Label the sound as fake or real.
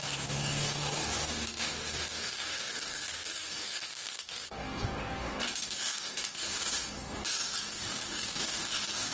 fake